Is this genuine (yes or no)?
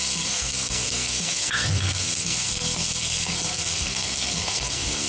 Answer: no